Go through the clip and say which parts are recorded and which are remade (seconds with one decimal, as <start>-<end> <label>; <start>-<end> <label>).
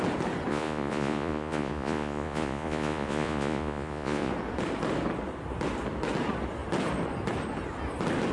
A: 0.0-0.5 recorded; 0.5-4.3 remade; 4.3-8.3 recorded